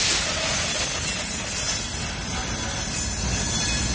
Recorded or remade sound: recorded